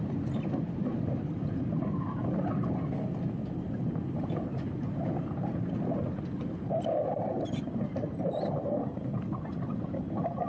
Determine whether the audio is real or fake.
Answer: real